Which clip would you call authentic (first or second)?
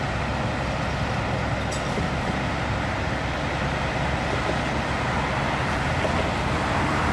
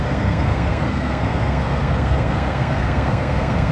first